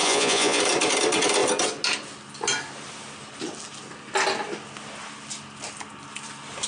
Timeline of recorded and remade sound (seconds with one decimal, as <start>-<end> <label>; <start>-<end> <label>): 0.0-0.6 remade; 0.6-6.7 recorded